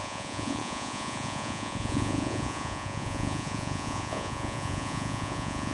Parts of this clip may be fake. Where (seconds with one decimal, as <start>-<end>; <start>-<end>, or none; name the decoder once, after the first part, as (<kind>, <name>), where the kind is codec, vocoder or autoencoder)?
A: 0.0-5.7 (vocoder, Vocos)